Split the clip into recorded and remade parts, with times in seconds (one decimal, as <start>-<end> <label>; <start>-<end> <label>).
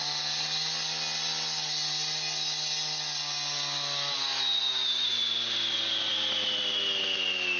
0.0-7.6 recorded